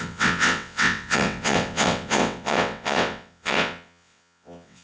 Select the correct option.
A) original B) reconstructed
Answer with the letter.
B